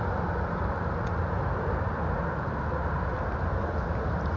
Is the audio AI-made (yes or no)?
no